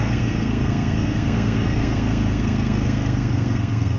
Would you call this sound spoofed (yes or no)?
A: yes